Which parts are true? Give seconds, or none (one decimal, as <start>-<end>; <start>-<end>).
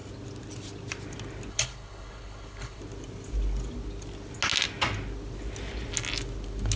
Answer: 0.0-1.5; 2.8-6.8